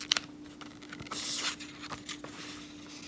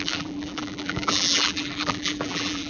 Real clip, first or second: first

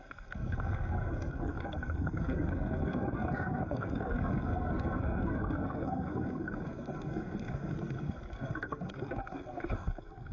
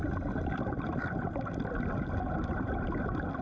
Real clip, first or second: second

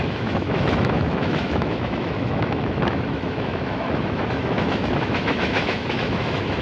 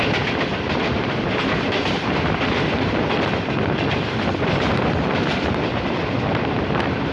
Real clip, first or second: second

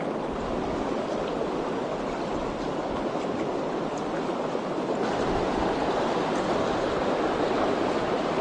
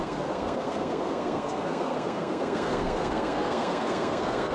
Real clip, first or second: first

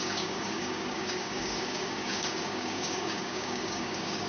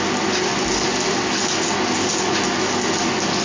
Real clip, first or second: second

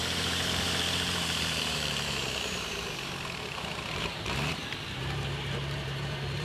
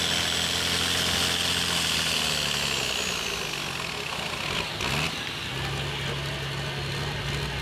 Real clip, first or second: second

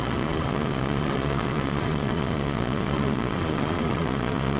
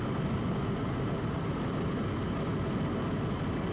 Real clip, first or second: second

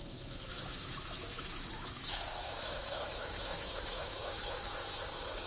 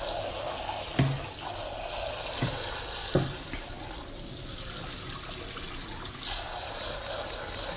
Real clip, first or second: second